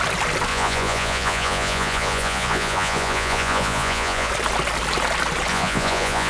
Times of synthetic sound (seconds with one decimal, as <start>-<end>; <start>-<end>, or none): 0.5-4.3; 5.5-6.3